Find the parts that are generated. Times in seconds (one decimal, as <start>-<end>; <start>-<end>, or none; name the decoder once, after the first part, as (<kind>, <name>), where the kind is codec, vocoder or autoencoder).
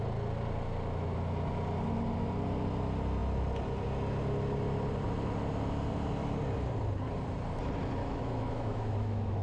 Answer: 8.0-9.4 (autoencoder, DAC-VAE)